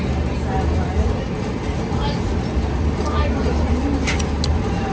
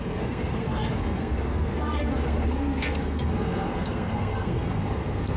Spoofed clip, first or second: second